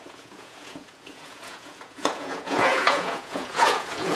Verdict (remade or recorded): remade